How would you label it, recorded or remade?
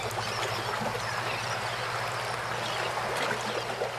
recorded